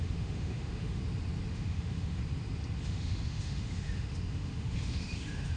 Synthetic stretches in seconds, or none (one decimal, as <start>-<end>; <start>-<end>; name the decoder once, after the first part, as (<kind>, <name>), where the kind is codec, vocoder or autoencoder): 0.0-1.0 (autoencoder, DAC-VAE); 1.5-2.2; 2.8-5.6